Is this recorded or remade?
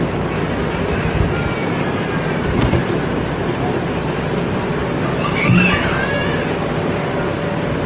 recorded